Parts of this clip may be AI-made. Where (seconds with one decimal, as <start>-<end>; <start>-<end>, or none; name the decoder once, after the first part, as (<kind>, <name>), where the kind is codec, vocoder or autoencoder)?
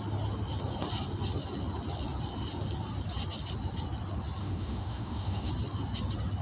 4.4-5.5 (autoencoder, DAC-VAE)